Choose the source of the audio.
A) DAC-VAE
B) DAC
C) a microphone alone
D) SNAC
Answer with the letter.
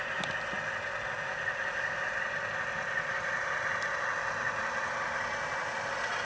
C